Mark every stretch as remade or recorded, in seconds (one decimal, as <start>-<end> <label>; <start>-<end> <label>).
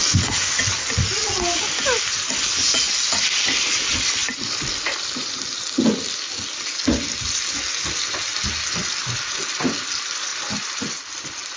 0.0-4.2 recorded; 4.2-6.2 remade; 6.2-11.6 recorded